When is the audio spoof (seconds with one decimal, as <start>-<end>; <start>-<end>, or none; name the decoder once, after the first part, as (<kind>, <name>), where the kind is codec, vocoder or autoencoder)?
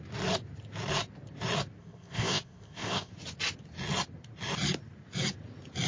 1.8-3.1 (codec, ZipCodec)